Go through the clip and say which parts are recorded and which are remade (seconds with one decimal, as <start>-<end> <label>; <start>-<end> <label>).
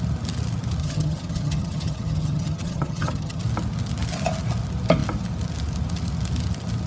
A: 0.0-0.8 recorded; 0.8-3.4 remade; 3.4-6.9 recorded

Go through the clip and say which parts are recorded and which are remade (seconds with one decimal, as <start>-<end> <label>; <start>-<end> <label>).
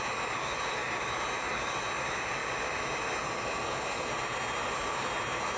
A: 0.0-5.6 recorded